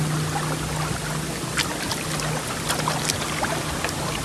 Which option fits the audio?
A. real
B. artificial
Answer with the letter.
A